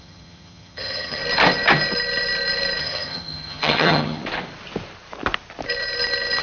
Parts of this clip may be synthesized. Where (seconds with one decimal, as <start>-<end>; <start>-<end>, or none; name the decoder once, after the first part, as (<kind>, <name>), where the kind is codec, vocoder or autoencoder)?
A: 0.0-1.2 (vocoder, HiFi-GAN); 2.8-4.2